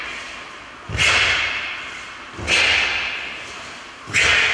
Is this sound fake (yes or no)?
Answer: no